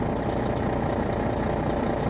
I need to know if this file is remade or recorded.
recorded